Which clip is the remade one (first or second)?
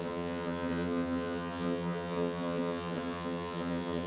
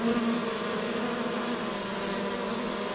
first